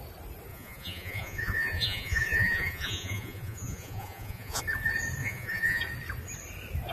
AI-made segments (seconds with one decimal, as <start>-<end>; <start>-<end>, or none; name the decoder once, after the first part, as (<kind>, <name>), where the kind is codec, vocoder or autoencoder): 0.5-4.6 (vocoder, Vocos); 5.2-5.8